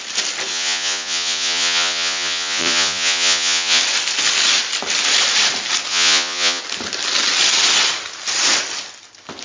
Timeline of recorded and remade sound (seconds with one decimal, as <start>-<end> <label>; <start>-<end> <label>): 0.0-0.5 recorded; 0.5-3.8 remade; 3.8-5.9 recorded; 5.9-6.6 remade; 6.6-9.4 recorded